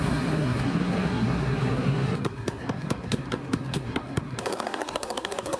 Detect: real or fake fake